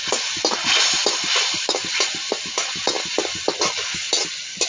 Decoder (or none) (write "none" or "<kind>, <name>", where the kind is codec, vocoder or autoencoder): none